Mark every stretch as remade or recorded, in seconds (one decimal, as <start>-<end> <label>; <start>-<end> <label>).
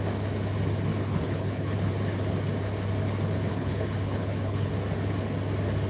0.0-0.9 recorded; 0.9-1.9 remade; 1.9-3.5 recorded; 3.5-4.7 remade; 4.7-5.9 recorded